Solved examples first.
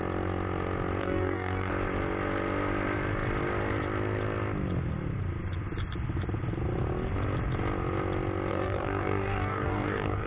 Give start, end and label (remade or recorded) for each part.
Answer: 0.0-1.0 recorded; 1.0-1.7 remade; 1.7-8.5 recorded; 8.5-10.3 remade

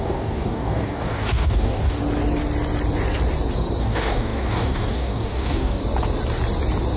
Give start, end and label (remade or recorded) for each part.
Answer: 0.0-2.0 remade; 2.0-3.8 recorded; 3.8-5.8 remade; 5.8-7.0 recorded

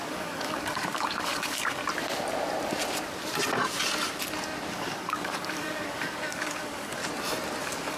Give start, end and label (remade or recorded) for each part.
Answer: 0.0-1.8 remade; 1.8-4.7 recorded; 4.7-7.0 remade; 7.0-7.6 recorded; 7.6-8.0 remade

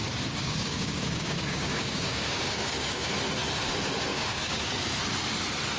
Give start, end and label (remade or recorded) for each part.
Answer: 0.0-3.1 remade; 3.1-4.1 recorded; 4.1-4.7 remade; 4.7-5.8 recorded